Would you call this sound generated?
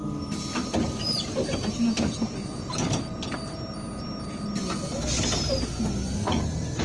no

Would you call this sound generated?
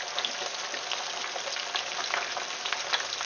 no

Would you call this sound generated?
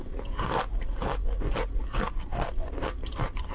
no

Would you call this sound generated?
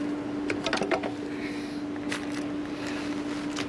no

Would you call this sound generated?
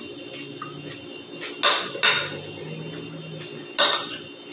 no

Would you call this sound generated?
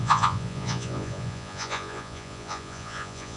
yes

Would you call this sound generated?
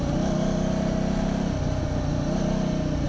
no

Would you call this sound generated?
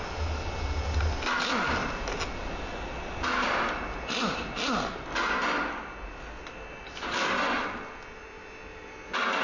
no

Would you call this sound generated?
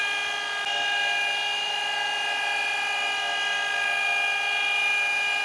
no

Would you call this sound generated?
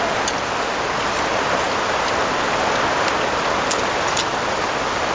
no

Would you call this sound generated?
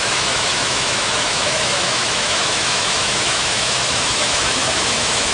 yes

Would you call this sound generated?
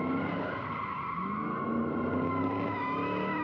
no